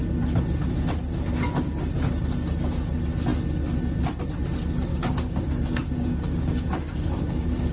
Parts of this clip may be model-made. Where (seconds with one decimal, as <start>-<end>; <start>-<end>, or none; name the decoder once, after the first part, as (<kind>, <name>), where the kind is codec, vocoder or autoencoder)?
4.9-7.7 (codec, DAC)